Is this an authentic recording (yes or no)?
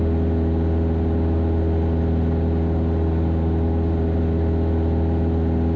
yes